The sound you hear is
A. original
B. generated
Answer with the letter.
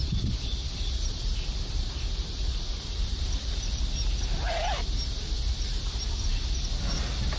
A